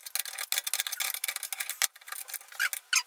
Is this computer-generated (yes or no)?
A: no